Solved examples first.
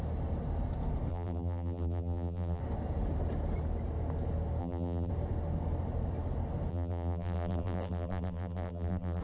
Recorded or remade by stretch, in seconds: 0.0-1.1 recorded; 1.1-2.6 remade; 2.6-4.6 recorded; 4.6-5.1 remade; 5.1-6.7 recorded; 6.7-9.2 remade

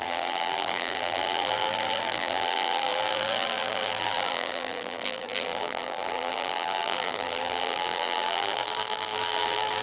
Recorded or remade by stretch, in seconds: 0.0-9.8 remade

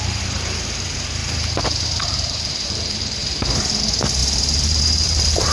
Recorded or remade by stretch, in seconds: 0.0-1.2 remade; 1.2-2.0 recorded; 2.0-3.2 remade; 3.2-3.8 recorded; 3.8-5.5 remade

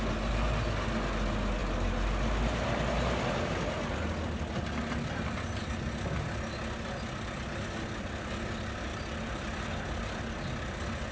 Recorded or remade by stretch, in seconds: 0.0-8.9 recorded; 8.9-9.7 remade; 9.7-11.1 recorded

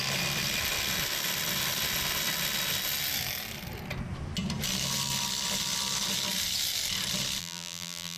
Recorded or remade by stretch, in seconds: 0.0-7.4 recorded; 7.4-8.2 remade

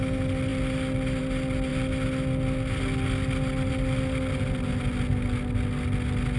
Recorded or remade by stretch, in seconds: 0.0-6.4 recorded